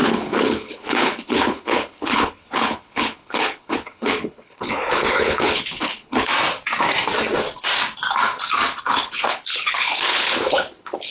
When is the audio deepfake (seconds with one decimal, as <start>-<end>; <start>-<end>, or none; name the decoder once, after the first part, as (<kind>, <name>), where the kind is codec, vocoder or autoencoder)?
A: 0.0-6.3 (codec, HILCodec); 8.8-11.1